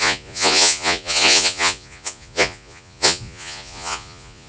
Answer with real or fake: fake